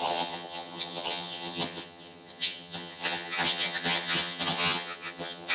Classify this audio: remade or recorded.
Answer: remade